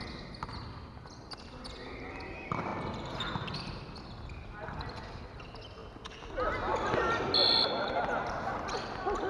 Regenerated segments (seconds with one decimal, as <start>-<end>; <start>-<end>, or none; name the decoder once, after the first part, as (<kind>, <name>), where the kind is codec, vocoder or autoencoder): none